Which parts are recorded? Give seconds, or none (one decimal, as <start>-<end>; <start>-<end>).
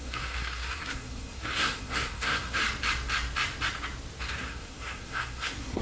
2.6-4.2